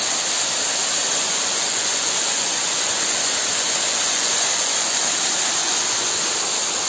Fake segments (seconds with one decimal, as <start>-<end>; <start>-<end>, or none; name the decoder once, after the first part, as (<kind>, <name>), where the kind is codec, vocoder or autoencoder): 1.0-5.1 (vocoder, Vocos); 5.6-6.3